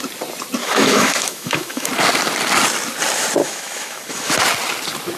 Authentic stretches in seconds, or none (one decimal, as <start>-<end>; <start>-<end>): 0.0-0.6; 1.9-3.4; 4.3-5.2